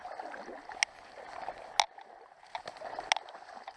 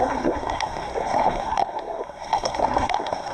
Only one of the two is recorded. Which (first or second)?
first